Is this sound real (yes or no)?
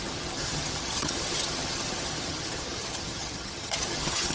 no